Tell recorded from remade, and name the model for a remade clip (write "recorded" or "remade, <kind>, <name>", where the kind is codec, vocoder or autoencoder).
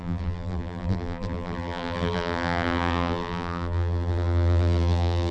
remade, vocoder, BigVGAN v2